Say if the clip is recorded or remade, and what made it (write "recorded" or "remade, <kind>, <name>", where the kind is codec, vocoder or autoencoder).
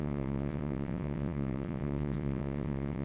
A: remade, vocoder, WaveNeXt